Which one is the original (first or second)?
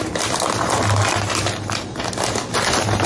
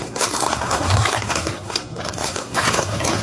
first